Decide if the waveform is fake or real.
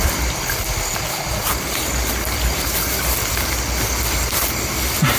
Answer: real